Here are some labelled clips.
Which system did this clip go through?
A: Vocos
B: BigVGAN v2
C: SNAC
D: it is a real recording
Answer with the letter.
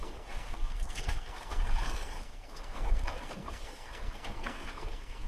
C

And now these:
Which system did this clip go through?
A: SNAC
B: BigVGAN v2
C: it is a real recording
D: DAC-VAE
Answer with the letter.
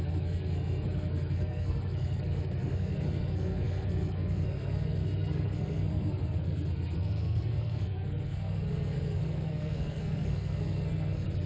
A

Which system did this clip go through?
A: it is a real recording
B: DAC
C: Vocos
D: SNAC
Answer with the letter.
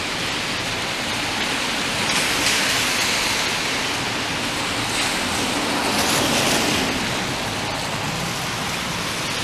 A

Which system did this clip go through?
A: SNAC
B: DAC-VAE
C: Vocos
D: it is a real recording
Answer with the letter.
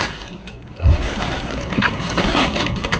A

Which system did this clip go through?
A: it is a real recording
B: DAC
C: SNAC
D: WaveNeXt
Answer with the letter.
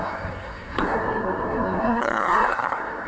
C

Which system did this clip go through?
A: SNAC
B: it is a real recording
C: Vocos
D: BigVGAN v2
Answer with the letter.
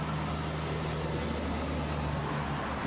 B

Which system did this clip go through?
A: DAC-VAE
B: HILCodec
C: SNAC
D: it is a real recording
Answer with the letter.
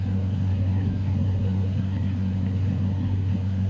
C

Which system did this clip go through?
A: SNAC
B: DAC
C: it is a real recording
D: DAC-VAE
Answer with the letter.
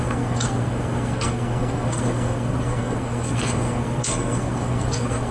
A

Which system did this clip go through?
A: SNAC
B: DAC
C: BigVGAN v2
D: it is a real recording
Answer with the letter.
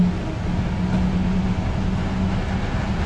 D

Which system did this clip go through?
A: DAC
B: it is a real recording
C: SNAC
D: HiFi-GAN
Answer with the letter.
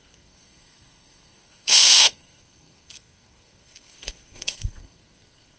C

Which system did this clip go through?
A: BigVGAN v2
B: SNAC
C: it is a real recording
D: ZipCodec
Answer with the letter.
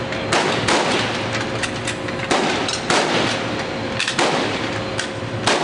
C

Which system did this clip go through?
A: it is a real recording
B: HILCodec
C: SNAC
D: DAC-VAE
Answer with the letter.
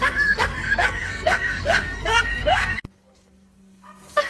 C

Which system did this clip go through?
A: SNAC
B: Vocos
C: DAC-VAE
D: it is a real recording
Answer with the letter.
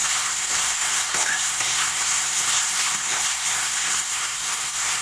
A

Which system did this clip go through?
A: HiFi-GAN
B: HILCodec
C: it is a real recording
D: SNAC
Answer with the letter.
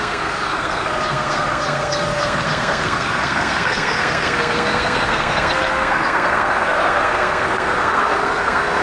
D